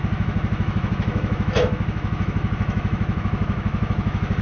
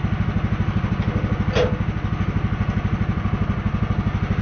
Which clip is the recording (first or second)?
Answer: second